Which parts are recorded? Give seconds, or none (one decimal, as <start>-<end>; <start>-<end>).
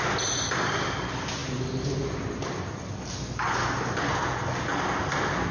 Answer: 0.0-5.5